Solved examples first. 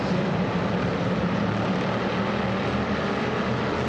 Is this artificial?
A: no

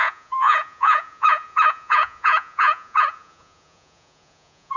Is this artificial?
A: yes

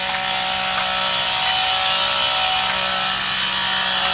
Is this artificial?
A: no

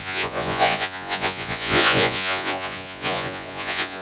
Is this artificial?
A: yes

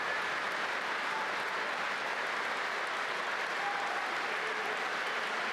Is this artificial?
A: no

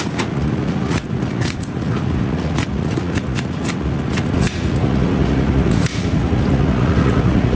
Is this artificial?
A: yes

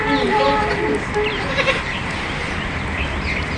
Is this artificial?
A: no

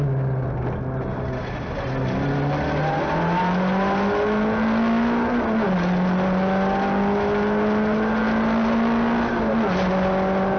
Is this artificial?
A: no